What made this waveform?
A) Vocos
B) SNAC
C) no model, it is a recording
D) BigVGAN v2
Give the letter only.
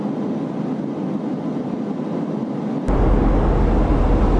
C